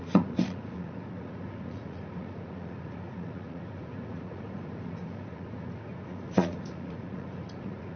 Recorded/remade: remade